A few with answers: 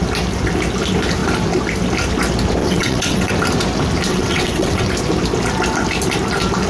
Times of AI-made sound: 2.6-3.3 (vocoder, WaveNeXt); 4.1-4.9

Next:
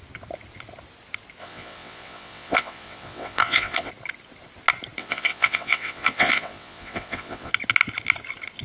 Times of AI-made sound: 1.4-3.9 (vocoder, WaveNeXt); 5.0-7.5

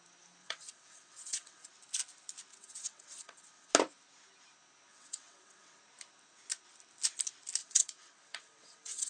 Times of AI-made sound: 0.4-1.7 (vocoder, WaveNeXt); 2.5-3.7; 4.9-5.8; 7.6-9.1

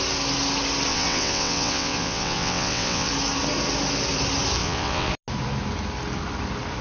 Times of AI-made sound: 0.9-3.1 (vocoder, WaveNeXt); 4.6-5.1

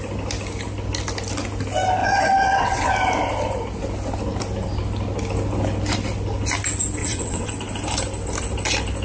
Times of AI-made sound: 2.0-2.9 (vocoder, WaveNeXt); 7.0-7.5

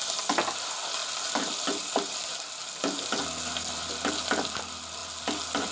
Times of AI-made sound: none